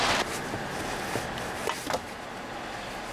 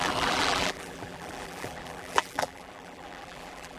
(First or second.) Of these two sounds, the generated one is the second